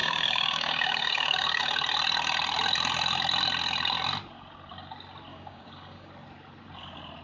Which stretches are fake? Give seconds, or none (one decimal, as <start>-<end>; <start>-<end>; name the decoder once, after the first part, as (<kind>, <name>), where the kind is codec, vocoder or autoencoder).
0.0-1.6 (codec, DAC); 5.3-6.1